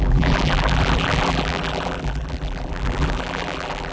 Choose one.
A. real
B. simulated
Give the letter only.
B